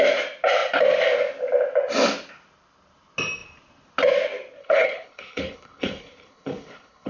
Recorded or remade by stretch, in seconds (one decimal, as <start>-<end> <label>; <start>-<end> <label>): 0.0-4.6 recorded; 4.6-7.1 remade